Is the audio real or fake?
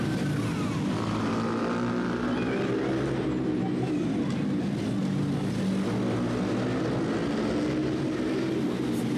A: real